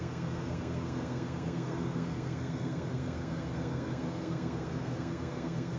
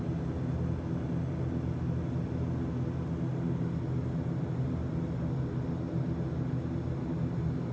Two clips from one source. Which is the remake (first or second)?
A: first